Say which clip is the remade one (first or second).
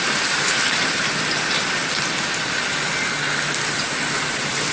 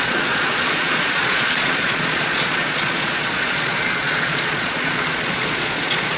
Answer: second